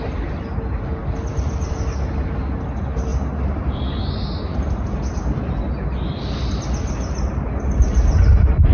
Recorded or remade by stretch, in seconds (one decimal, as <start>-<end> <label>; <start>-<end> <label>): 0.0-8.7 recorded